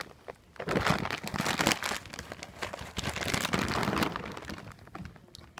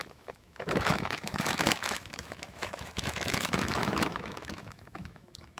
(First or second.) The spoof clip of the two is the second